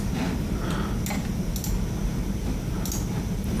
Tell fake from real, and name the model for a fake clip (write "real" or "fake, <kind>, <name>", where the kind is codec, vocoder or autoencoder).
real